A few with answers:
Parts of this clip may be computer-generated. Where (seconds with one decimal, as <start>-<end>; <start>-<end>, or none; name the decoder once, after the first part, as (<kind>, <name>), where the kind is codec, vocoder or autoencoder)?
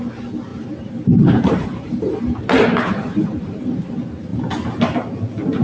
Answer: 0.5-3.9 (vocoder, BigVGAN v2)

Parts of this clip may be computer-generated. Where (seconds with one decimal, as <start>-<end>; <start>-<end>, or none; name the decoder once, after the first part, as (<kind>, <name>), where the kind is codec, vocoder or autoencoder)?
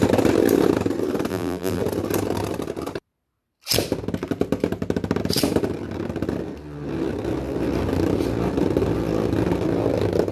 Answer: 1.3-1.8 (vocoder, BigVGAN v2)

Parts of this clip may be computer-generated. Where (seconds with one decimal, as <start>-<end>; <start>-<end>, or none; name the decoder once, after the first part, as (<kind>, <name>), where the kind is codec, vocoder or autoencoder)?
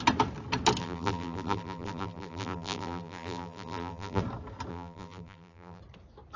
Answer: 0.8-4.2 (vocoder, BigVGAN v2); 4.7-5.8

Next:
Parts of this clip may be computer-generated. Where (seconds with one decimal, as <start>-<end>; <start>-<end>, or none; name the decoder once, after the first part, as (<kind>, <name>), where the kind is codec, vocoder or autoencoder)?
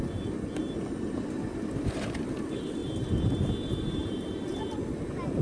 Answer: 2.8-4.6 (vocoder, BigVGAN v2)